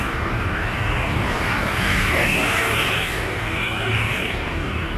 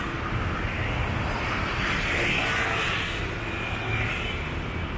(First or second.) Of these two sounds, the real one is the second